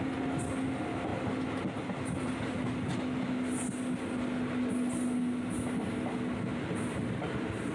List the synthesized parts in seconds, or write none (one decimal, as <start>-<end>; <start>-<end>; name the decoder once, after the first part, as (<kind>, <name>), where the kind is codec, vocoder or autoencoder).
6.5-7.7 (vocoder, BigVGAN v2)